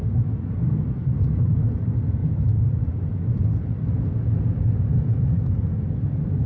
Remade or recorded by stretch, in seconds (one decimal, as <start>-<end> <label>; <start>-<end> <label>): 0.0-2.2 recorded; 2.2-2.9 remade; 2.9-6.5 recorded